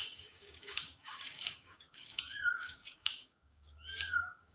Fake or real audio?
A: fake